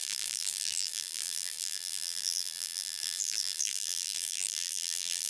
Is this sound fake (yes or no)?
yes